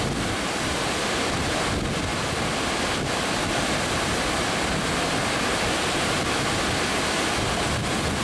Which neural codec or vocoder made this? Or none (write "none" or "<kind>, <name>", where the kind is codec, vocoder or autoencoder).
none